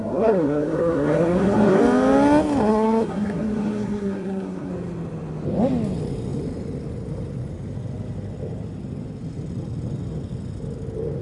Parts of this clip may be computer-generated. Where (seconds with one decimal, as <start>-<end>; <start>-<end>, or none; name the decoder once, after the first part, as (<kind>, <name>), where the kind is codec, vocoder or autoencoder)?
0.0-1.8 (codec, SNAC); 2.7-4.7